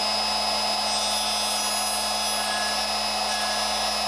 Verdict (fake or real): real